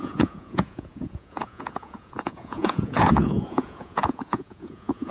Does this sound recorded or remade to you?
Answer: remade